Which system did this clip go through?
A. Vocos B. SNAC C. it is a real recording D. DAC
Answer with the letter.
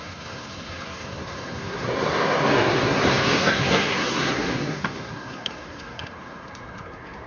B